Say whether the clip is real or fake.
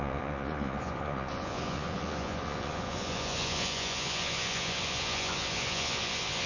fake